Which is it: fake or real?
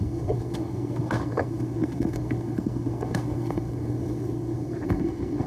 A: fake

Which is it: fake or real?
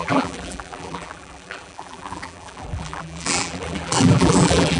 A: fake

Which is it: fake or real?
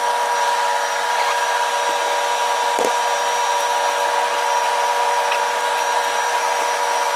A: real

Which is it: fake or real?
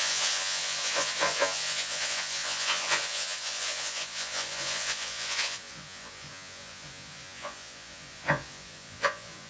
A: fake